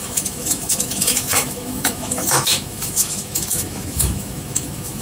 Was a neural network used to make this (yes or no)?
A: yes